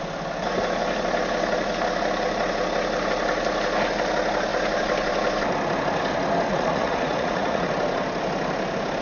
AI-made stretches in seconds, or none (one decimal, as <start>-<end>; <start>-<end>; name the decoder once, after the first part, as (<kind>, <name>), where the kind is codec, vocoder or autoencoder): 6.5-7.7 (vocoder, Vocos)